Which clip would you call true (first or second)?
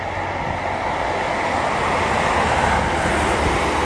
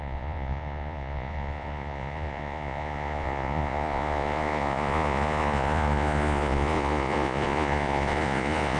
first